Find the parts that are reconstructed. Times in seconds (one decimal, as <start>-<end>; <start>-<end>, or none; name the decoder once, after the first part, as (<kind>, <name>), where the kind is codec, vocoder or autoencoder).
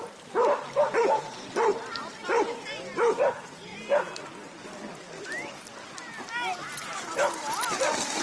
none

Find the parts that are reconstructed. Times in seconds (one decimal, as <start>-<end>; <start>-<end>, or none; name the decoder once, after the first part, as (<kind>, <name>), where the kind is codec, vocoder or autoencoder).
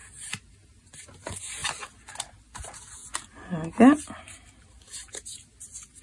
none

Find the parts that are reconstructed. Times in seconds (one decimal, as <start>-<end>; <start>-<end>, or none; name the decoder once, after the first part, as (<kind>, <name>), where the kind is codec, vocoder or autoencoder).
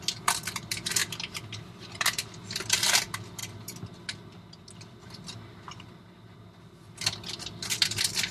none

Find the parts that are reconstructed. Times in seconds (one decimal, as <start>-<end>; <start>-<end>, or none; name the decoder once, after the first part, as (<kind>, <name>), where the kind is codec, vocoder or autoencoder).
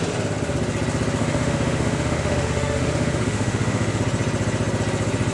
1.2-4.0 (autoencoder, DAC-VAE)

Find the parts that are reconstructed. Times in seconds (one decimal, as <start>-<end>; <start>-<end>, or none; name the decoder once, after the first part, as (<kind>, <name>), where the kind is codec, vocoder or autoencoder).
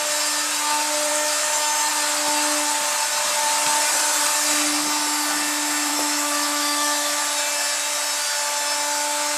1.1-1.9 (autoencoder, DAC-VAE); 5.9-7.2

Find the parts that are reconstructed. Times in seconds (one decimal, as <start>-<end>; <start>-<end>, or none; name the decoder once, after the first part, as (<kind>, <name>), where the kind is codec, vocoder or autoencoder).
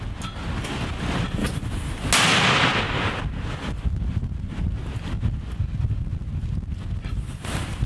none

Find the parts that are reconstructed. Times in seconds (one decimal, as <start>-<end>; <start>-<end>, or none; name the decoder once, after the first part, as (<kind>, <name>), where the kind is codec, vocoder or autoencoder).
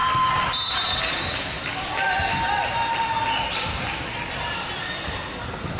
none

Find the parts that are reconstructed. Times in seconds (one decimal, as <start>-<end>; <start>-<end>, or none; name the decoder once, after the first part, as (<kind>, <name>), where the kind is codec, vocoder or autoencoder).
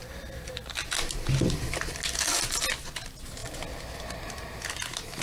none